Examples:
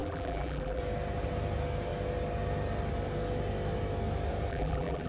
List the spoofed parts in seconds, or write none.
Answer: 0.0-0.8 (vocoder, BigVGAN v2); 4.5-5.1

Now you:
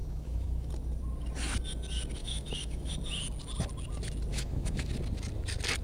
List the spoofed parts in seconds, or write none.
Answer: 0.0-0.7 (autoencoder, DAC-VAE); 2.2-2.9; 4.3-4.9

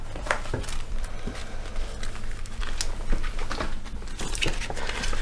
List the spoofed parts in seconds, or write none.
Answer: none

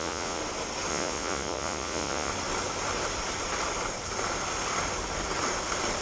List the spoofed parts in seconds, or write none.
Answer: 0.0-0.4 (vocoder, Vocos); 0.9-2.3

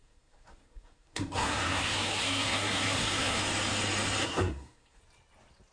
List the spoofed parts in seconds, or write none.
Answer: 0.0-3.4 (codec, SNAC); 4.2-5.0

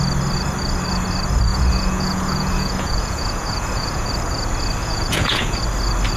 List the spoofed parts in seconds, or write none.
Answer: 1.5-4.1 (vocoder, Vocos); 4.8-5.6

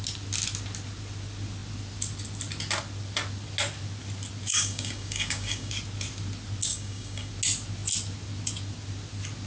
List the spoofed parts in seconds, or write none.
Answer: 4.5-5.7 (codec, DAC); 6.7-7.3